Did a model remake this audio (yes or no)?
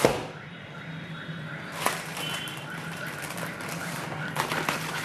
yes